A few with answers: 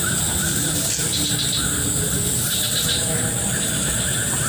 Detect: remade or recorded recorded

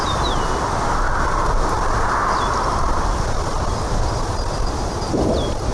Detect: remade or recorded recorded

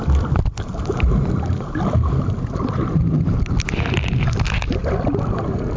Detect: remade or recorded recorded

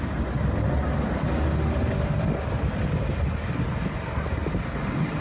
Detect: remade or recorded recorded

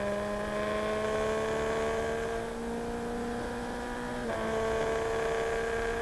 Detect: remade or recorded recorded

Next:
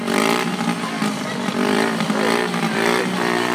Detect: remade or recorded remade